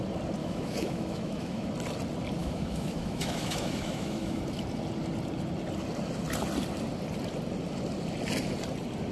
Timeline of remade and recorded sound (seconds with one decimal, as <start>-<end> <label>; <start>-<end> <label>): 0.0-0.4 recorded; 0.4-1.7 remade; 1.7-2.4 recorded; 2.4-4.4 remade; 4.4-9.1 recorded

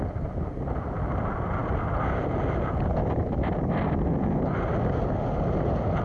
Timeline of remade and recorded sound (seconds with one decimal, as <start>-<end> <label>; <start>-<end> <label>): 0.0-6.0 recorded

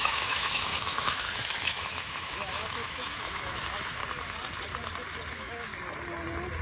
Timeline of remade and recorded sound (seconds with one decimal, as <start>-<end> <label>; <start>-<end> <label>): 0.0-4.0 remade; 4.0-5.3 recorded; 5.3-5.7 remade; 5.7-6.6 recorded

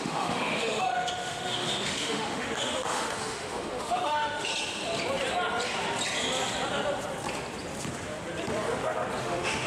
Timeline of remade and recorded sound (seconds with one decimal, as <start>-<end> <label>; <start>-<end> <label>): 0.0-4.5 remade; 4.5-9.2 recorded; 9.2-9.7 remade